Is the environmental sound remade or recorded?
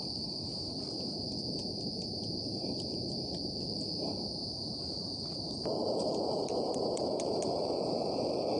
remade